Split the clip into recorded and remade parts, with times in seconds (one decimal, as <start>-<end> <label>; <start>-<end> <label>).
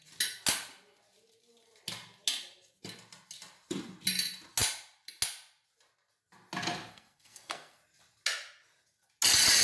0.0-6.9 recorded; 6.9-7.8 remade; 7.8-9.6 recorded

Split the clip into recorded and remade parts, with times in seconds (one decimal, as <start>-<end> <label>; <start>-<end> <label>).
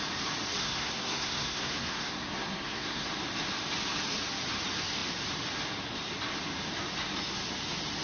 0.0-0.6 recorded; 0.6-3.1 remade; 3.1-8.0 recorded